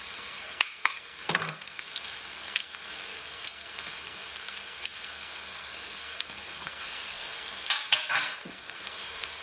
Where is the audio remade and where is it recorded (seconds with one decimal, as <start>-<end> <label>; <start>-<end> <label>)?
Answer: 0.0-9.4 remade